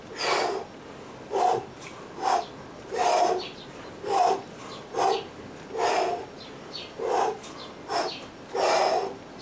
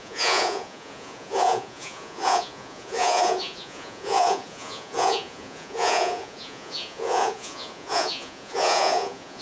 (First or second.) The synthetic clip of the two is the second